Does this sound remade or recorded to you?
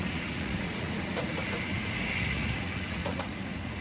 remade